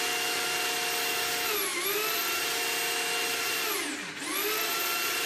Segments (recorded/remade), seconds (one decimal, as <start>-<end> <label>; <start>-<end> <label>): 0.0-5.3 recorded